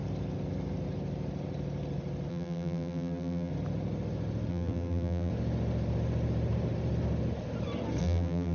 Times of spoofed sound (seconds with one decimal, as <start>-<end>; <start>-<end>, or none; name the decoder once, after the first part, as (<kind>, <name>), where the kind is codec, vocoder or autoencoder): 2.3-3.5 (vocoder, BigVGAN v2); 4.5-5.3; 8.0-8.5